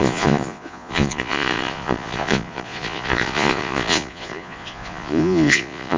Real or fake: fake